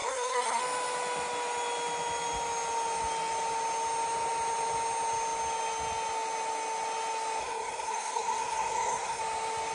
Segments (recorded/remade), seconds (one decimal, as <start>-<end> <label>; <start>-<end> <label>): 0.0-0.6 remade; 0.6-7.4 recorded; 7.4-9.2 remade; 9.2-9.7 recorded